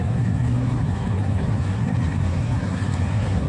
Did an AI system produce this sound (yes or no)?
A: yes